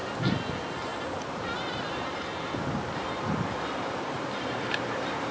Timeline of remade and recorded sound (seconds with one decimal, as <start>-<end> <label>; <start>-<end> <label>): 0.0-0.5 recorded; 0.5-5.3 remade